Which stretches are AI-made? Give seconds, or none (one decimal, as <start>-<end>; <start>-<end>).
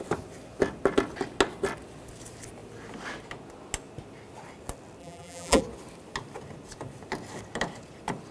5.0-5.6